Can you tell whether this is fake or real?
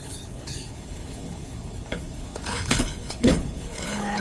fake